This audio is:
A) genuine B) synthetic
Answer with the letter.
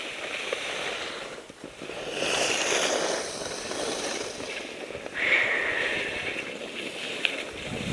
A